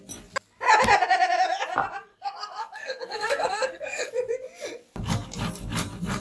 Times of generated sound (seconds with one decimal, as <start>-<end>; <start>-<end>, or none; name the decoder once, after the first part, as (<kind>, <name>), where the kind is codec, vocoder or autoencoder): 2.1-4.1 (codec, SNAC)